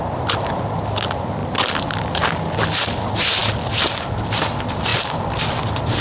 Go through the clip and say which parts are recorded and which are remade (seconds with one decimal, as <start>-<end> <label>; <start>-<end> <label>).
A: 0.0-1.4 remade; 1.4-2.0 recorded; 2.0-6.0 remade